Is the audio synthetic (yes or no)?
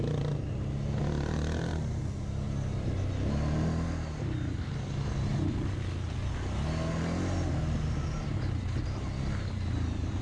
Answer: no